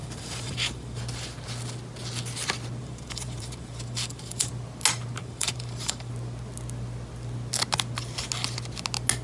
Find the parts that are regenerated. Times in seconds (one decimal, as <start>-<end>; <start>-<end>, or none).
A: 0.0-1.0; 2.8-4.5; 5.2-6.1